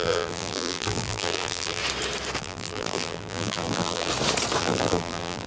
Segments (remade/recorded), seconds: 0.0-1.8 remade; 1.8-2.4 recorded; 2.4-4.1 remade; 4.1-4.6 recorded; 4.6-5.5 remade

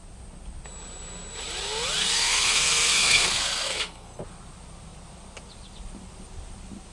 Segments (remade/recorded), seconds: 0.0-2.0 recorded; 2.0-4.2 remade; 4.2-6.9 recorded

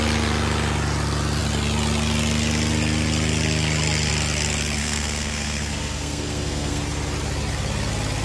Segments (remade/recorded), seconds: 0.0-4.8 recorded; 4.8-6.8 remade; 6.8-8.2 recorded

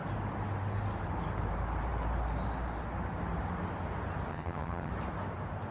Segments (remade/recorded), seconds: 0.0-4.3 recorded; 4.3-4.9 remade; 4.9-5.7 recorded

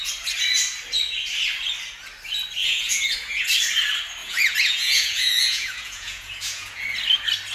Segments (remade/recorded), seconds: 0.0-2.6 recorded; 2.6-3.4 remade; 3.4-4.2 recorded; 4.2-6.8 remade; 6.8-7.5 recorded

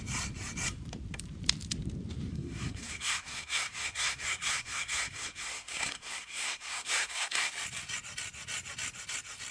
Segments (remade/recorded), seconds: 0.0-2.3 recorded; 2.3-7.5 remade; 7.5-9.5 recorded

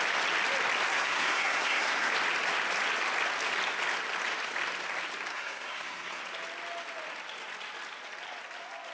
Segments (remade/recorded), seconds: 0.0-0.9 recorded; 0.9-2.1 remade; 2.1-5.3 recorded; 5.3-6.2 remade; 6.2-8.9 recorded